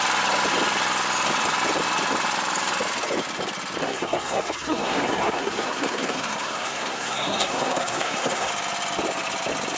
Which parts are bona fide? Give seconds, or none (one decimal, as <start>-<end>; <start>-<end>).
0.0-3.8; 8.5-9.8